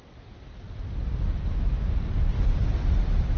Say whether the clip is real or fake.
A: real